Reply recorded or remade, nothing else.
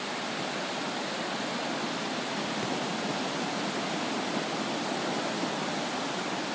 recorded